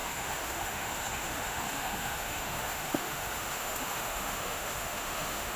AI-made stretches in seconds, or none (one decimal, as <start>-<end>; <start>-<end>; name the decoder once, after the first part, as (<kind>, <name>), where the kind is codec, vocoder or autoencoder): 0.0-5.6 (autoencoder, DAC-VAE)